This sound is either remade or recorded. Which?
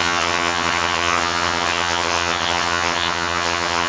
remade